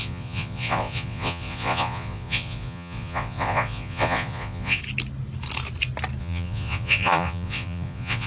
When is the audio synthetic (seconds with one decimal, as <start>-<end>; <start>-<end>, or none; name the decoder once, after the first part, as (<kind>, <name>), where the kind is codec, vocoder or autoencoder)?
0.0-4.8 (vocoder, Vocos); 6.2-8.3